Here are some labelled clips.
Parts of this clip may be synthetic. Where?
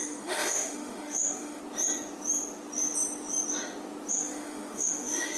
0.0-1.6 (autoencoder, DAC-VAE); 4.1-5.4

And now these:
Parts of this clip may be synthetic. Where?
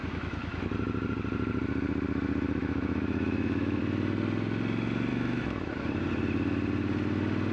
0.0-0.6 (autoencoder, DAC-VAE); 2.6-3.8; 5.1-5.7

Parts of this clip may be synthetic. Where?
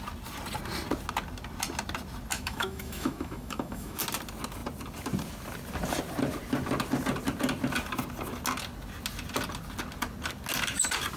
2.3-4.0 (autoencoder, DAC-VAE)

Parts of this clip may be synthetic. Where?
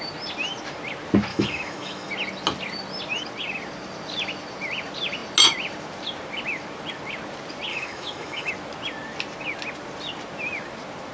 1.3-2.1 (autoencoder, DAC-VAE); 7.7-8.5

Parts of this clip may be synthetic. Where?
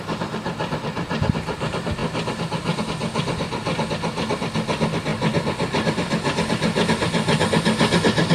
none